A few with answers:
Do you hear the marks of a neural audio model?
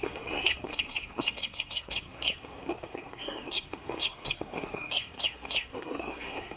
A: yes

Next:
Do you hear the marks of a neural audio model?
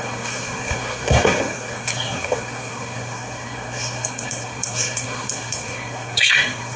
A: yes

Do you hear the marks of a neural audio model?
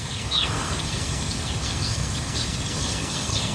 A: yes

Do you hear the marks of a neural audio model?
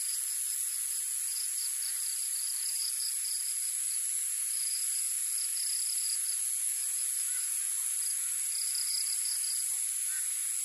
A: no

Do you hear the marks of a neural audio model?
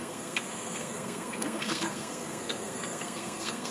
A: yes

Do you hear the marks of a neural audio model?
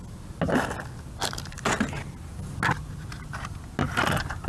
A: no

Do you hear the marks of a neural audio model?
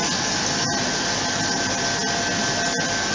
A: no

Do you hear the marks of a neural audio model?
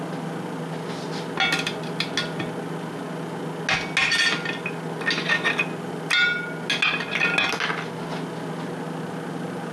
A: no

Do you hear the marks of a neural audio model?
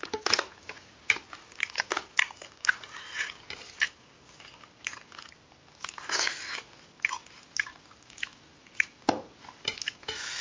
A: no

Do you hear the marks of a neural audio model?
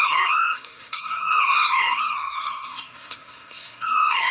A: yes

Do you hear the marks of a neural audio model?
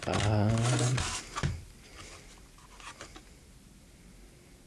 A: no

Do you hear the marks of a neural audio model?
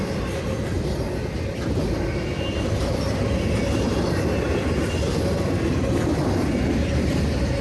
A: no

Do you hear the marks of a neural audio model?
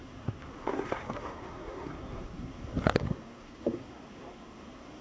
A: yes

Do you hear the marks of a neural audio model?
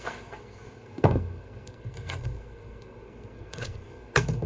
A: yes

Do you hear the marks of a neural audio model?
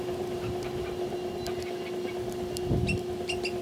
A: no